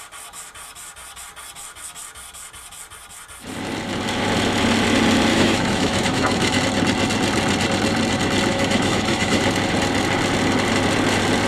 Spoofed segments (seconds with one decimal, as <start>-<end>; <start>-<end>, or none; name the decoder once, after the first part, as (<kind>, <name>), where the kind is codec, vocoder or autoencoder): 5.3-6.6 (autoencoder, DAC-VAE); 8.5-9.4